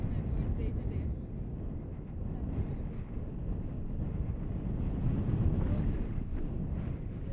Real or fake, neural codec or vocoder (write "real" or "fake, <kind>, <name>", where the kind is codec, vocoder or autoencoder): real